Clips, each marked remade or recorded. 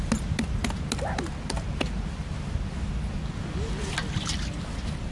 recorded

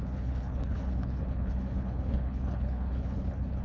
remade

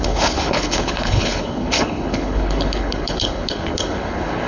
remade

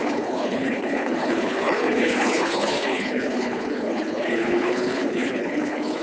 remade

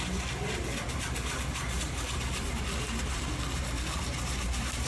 recorded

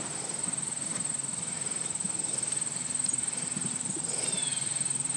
recorded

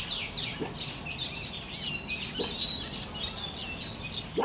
recorded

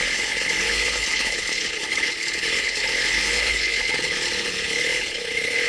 remade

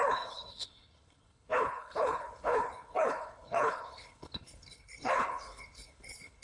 remade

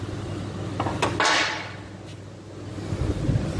recorded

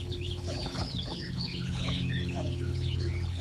remade